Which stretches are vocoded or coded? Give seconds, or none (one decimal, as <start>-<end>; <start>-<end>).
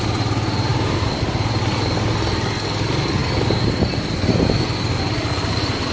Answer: none